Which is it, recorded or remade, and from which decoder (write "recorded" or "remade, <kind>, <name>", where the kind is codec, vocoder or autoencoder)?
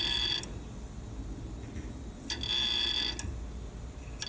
recorded